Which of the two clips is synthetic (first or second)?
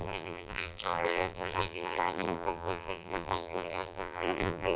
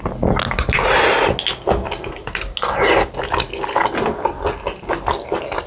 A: first